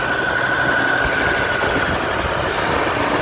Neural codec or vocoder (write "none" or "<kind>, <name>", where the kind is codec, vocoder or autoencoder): none